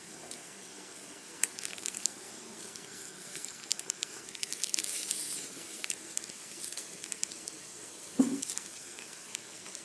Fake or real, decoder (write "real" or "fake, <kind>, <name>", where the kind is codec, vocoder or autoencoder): fake, codec, SNAC